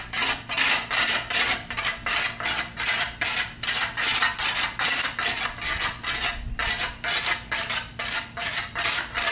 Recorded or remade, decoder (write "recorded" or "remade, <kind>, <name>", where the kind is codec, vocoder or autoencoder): recorded